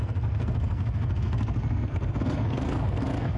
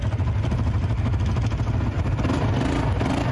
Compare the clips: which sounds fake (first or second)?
first